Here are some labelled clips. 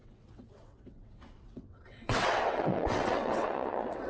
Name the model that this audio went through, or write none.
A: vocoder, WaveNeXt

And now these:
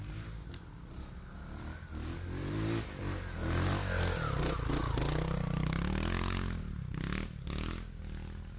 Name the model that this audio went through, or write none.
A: none